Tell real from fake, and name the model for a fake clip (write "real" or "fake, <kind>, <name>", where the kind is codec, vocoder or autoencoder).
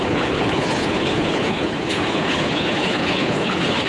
fake, codec, HILCodec